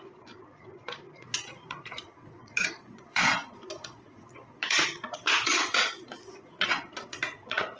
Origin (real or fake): fake